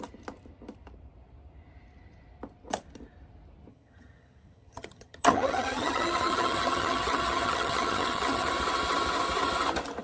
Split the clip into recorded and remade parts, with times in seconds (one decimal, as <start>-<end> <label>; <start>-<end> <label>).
0.0-3.7 recorded; 3.7-8.5 remade; 8.5-10.0 recorded